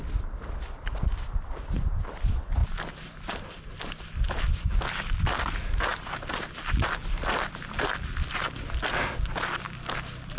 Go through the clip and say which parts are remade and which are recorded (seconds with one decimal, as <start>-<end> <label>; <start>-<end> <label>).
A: 0.0-2.6 recorded; 2.6-4.7 remade; 4.7-5.9 recorded; 5.9-7.9 remade; 7.9-10.4 recorded